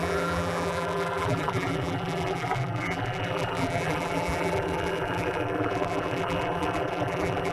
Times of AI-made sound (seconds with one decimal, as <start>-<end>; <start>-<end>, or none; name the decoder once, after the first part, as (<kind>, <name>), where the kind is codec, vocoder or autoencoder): 0.0-7.5 (vocoder, BigVGAN v2)